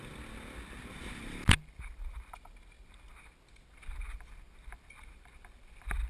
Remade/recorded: recorded